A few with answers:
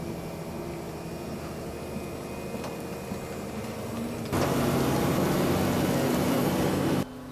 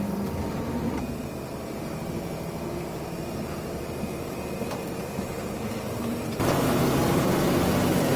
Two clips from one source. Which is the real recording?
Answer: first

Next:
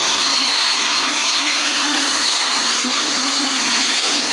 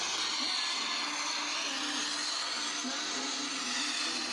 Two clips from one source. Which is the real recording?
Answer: second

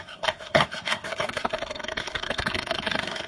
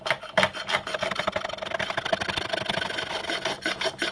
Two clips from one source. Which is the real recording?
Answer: second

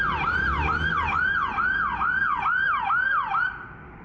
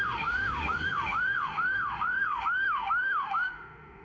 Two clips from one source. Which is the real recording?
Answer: first